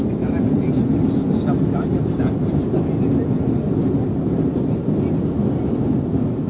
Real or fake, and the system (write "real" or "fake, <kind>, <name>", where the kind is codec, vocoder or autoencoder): real